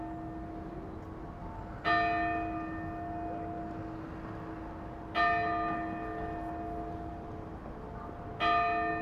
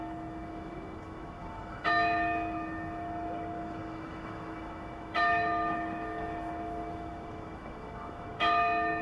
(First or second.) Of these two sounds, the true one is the first